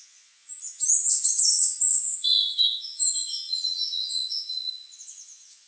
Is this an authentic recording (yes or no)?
no